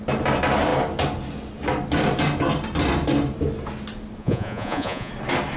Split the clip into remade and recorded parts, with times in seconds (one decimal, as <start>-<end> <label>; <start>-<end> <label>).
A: 0.0-4.2 recorded; 4.2-5.1 remade; 5.1-5.6 recorded